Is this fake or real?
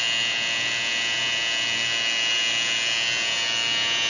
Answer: real